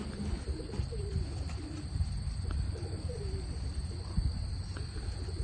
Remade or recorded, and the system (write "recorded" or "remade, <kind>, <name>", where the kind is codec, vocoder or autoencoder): remade, vocoder, BigVGAN v2